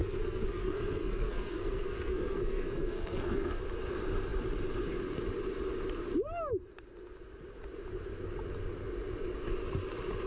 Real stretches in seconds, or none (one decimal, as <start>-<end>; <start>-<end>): 3.6-10.3